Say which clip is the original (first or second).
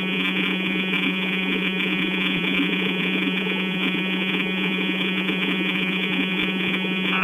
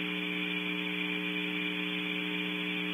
second